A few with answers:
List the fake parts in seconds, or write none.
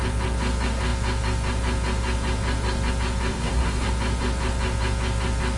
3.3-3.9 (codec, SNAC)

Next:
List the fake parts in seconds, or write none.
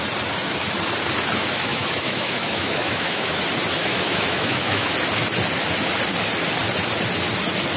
1.7-3.4 (autoencoder, DAC-VAE); 3.8-4.9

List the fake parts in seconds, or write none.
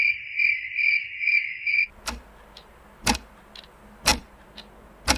1.0-1.7 (autoencoder, DAC-VAE)